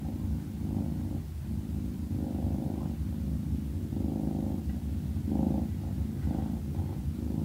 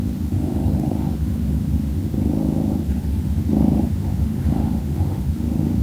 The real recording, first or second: first